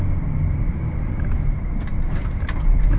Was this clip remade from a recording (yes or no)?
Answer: no